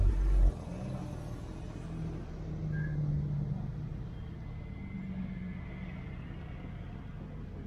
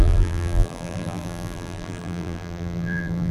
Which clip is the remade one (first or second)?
second